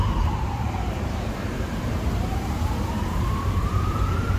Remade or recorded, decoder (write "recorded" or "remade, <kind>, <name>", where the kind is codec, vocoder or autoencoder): remade, vocoder, BigVGAN v2